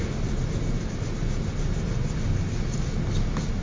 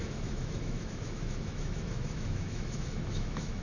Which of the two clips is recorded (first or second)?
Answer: first